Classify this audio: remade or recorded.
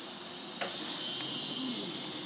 recorded